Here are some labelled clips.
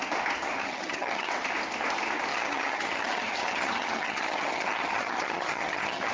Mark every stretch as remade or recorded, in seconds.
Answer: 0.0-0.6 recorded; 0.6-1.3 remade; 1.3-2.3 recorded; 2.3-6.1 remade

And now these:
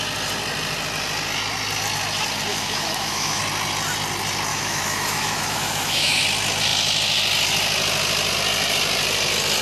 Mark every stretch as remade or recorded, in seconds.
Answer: 0.0-2.5 recorded; 2.5-3.4 remade; 3.4-4.5 recorded; 4.5-6.2 remade; 6.2-9.6 recorded

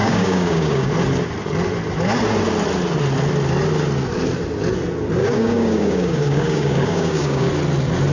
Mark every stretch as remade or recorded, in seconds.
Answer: 0.0-0.9 remade; 0.9-5.2 recorded; 5.2-7.5 remade; 7.5-8.1 recorded

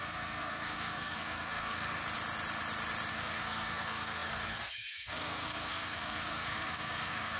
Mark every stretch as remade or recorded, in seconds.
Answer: 0.0-2.0 remade; 2.0-3.1 recorded; 3.1-7.4 remade

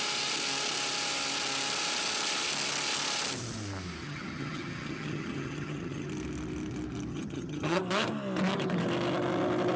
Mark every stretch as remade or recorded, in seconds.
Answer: 0.0-4.0 recorded; 4.0-6.1 remade; 6.1-7.1 recorded; 7.1-7.8 remade; 7.8-9.8 recorded

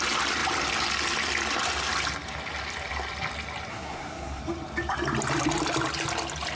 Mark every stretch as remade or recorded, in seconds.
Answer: 0.0-3.7 recorded; 3.7-4.4 remade; 4.4-6.6 recorded

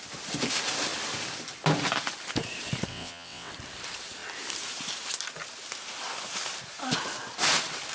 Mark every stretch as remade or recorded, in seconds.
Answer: 0.0-2.9 recorded; 2.9-3.5 remade; 3.5-7.9 recorded

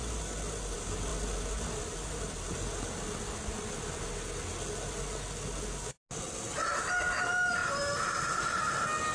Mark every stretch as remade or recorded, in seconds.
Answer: 0.0-7.6 recorded; 7.6-8.7 remade; 8.7-9.1 recorded